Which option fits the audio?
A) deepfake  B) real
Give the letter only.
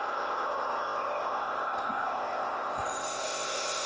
A